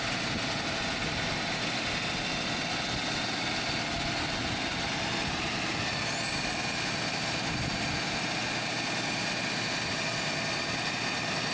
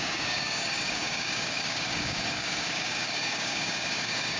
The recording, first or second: first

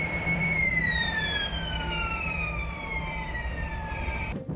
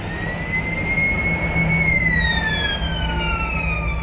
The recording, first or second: second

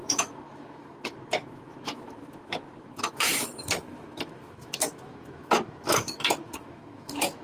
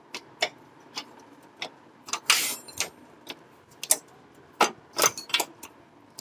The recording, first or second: second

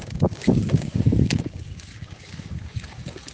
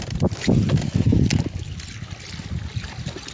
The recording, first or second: second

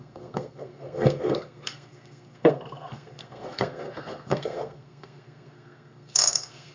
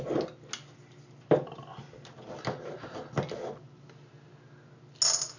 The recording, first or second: second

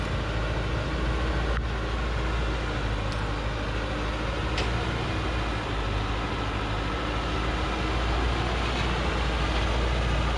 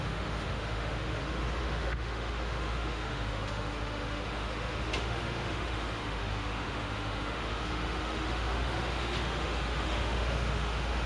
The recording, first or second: first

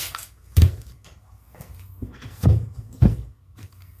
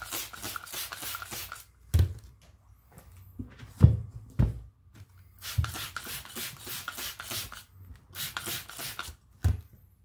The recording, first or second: second